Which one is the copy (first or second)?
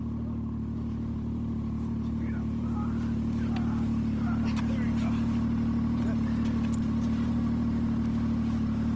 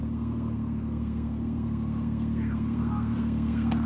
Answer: second